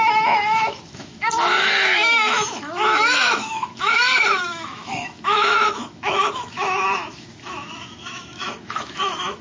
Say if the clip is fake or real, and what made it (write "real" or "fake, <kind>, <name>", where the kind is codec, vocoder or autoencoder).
fake, autoencoder, DAC-VAE